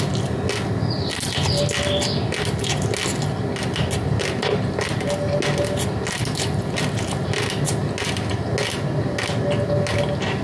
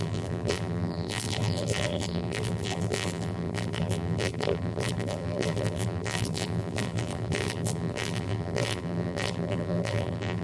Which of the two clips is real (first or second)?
first